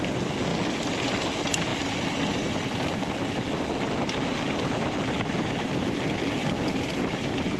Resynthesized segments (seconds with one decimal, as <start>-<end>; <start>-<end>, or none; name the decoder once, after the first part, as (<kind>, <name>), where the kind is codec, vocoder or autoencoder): none

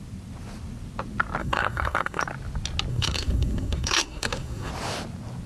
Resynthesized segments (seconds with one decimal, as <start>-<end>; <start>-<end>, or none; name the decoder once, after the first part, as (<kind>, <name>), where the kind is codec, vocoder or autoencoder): 1.4-2.2 (codec, SNAC); 2.9-4.7

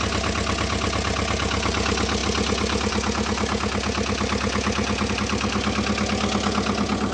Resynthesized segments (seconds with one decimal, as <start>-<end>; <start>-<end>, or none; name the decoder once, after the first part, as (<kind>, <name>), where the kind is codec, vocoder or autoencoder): none

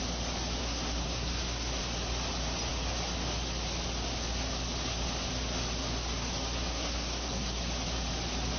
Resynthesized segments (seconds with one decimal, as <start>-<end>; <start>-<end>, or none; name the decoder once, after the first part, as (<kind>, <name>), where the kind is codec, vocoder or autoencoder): 0.6-1.8 (codec, SNAC); 6.7-7.6